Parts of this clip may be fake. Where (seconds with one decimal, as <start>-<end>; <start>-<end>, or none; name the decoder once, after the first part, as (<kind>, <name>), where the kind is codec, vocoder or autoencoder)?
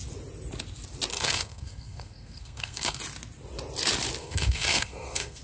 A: 1.1-3.0 (codec, SNAC); 4.2-5.4